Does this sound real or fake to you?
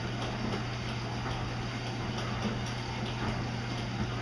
real